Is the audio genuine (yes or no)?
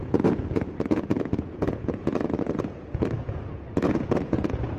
no